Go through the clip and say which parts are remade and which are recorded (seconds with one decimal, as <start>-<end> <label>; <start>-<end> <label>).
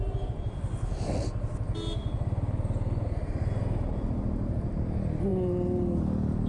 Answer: 0.0-6.5 recorded